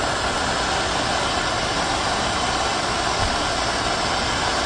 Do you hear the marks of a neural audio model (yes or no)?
no